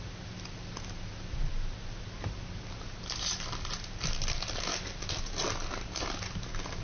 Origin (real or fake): real